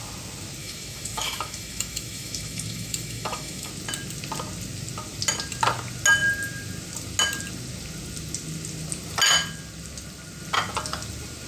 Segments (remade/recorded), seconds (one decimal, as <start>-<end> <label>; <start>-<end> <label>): 0.0-0.6 recorded; 0.6-3.7 remade; 3.7-11.5 recorded